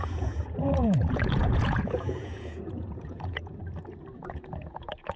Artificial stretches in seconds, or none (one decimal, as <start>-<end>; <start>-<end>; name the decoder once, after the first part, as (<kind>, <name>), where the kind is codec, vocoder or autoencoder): 0.0-3.6 (vocoder, Vocos); 4.2-5.2